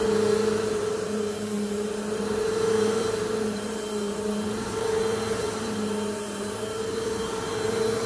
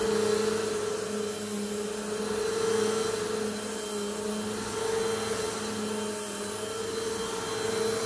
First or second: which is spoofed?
first